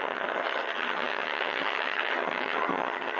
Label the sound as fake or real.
fake